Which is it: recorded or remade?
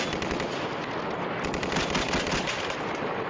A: recorded